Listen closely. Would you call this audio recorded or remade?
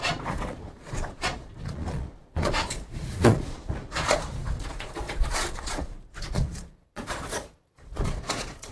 remade